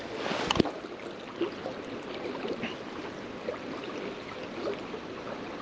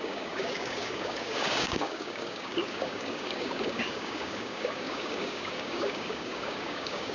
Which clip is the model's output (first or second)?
second